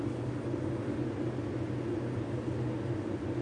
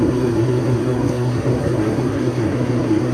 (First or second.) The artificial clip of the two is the second